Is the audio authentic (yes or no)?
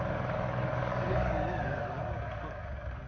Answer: no